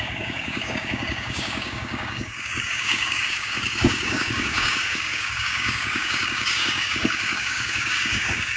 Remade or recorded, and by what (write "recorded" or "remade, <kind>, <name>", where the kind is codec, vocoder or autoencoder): remade, codec, DAC